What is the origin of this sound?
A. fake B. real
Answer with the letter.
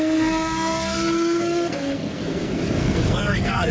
A